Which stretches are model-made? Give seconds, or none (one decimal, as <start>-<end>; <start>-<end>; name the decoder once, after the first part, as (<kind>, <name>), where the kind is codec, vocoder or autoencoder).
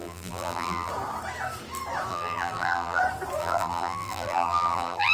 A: 0.0-0.9 (vocoder, BigVGAN v2); 2.1-3.0; 3.4-5.1